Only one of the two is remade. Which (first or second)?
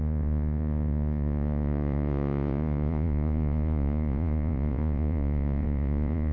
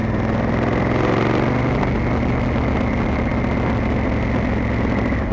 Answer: first